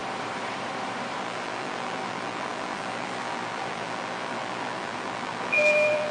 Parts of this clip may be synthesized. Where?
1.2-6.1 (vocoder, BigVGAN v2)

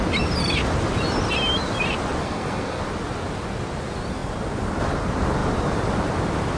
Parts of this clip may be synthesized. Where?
2.2-2.8 (codec, SNAC)

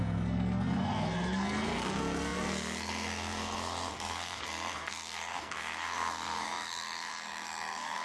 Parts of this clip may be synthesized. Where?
0.0-8.0 (codec, SNAC)

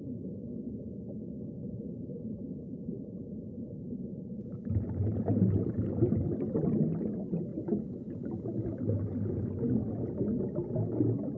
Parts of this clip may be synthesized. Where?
1.6-5.9 (vocoder, BigVGAN v2); 7.5-8.8

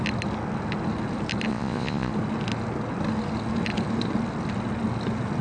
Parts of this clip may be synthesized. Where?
1.5-2.1 (vocoder, Vocos)

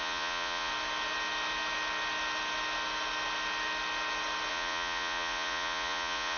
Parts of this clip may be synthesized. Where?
0.0-0.7 (vocoder, Vocos); 4.5-6.4